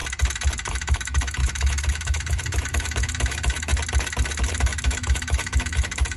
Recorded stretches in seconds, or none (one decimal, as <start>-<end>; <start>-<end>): 0.0-0.7; 3.7-4.5

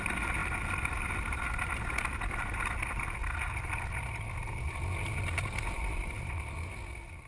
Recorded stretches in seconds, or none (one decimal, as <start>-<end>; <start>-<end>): 0.0-7.3